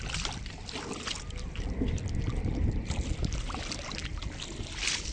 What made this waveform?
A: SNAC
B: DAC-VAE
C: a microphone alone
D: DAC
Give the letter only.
C